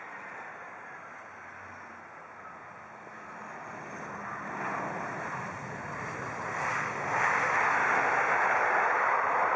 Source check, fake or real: real